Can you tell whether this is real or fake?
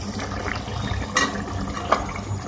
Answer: real